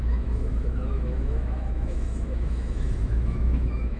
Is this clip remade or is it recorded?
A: remade